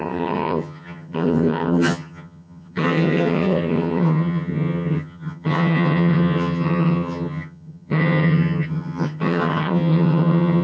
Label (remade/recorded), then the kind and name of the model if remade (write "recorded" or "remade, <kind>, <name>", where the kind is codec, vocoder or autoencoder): remade, vocoder, HiFi-GAN